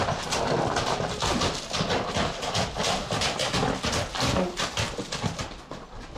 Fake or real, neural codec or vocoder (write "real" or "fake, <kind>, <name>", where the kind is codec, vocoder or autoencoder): real